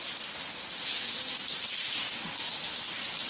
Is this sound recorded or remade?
recorded